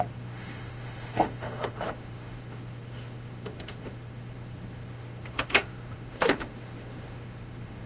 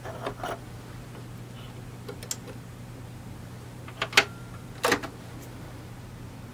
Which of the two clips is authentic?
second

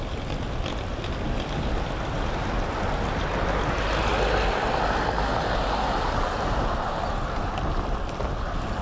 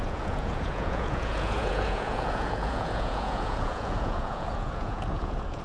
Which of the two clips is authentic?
first